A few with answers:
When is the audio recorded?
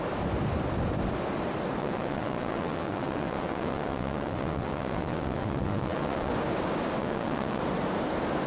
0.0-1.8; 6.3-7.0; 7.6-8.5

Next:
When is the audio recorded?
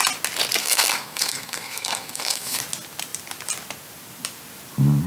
0.0-0.6; 2.6-5.1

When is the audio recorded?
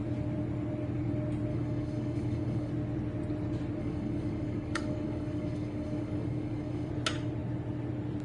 0.0-1.5; 2.7-3.8; 6.9-8.2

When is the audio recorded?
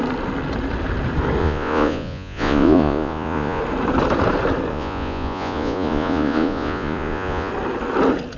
0.0-1.4; 3.6-4.7; 7.5-8.4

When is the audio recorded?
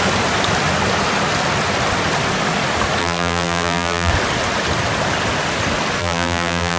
0.0-3.0; 4.1-6.0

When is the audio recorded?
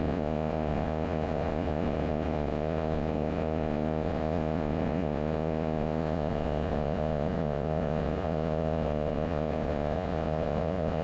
none